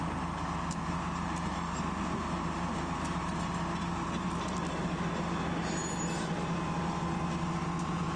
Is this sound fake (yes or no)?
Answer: no